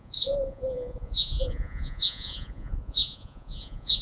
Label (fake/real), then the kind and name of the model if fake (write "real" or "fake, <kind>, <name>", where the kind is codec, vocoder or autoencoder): fake, vocoder, Vocos